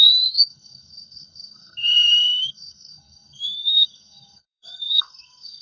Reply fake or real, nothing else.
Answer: fake